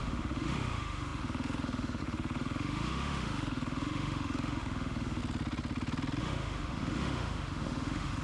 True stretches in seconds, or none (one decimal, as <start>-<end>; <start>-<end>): 5.2-6.2